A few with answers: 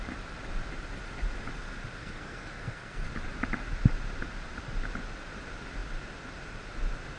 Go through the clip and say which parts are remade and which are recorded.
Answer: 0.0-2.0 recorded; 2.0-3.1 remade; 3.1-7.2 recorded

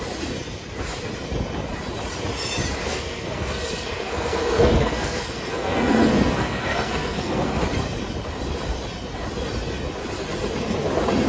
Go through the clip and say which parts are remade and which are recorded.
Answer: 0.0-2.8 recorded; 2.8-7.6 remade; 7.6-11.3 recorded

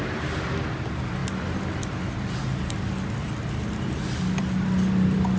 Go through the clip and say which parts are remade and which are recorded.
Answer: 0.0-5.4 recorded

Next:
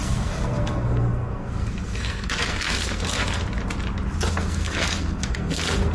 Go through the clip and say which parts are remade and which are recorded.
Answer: 0.0-3.4 remade; 3.4-4.3 recorded; 4.3-5.9 remade

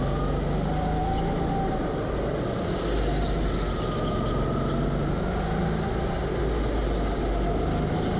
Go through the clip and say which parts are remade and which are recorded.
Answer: 0.0-8.2 recorded